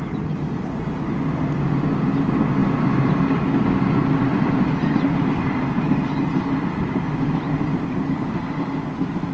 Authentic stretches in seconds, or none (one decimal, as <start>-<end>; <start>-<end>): 0.0-2.6; 3.2-4.3; 8.3-9.3

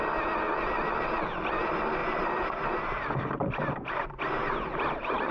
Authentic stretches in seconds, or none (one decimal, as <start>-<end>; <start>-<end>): 0.0-2.0